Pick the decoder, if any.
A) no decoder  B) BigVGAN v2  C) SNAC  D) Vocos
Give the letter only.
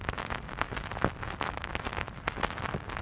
A